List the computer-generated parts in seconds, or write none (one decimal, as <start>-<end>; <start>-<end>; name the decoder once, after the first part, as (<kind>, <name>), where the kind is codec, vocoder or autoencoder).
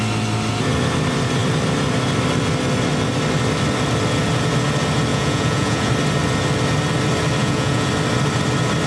5.1-5.9 (vocoder, Vocos); 7.4-7.9